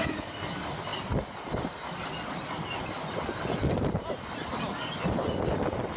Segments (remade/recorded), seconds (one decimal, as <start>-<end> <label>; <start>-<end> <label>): 0.0-6.0 recorded